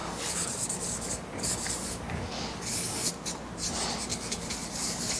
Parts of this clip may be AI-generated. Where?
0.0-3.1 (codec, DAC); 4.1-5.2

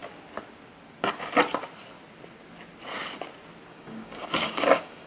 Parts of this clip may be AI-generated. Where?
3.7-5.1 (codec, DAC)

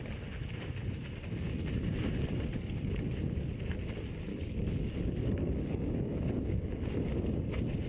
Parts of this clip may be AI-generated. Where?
4.3-7.1 (codec, DAC)